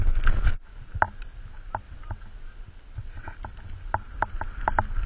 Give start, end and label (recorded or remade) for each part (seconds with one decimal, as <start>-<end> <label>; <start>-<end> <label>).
0.0-3.0 recorded; 3.0-5.1 remade